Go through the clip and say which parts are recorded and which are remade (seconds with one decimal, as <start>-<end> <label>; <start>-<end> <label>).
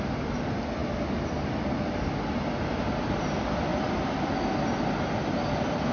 0.0-3.7 recorded; 3.7-4.3 remade; 4.3-5.9 recorded